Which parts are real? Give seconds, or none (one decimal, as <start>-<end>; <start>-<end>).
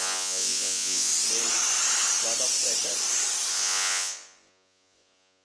1.1-3.5